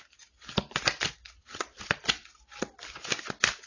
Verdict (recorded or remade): recorded